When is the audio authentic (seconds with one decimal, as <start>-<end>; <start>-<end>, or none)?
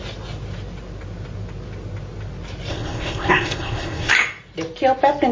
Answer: 0.0-2.7; 4.1-5.3